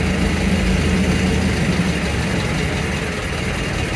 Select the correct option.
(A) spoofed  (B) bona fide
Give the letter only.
B